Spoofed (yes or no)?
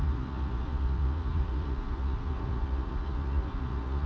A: yes